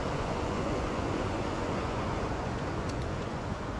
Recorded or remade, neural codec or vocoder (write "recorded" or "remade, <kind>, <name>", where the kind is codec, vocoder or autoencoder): remade, vocoder, Vocos